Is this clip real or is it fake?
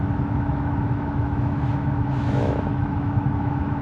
fake